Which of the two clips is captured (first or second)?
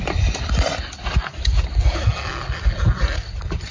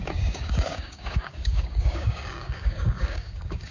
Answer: first